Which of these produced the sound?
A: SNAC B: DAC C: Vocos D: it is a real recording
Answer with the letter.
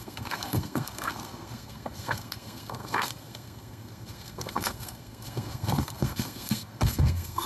A